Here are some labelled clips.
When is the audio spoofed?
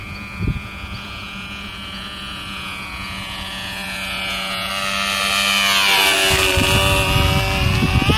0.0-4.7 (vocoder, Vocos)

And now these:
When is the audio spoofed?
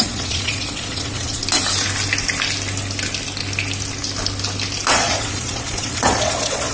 0.0-1.4 (vocoder, Vocos); 4.9-6.7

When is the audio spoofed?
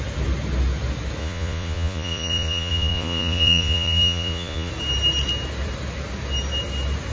1.2-4.7 (vocoder, Vocos)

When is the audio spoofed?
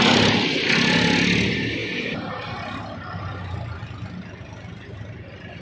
none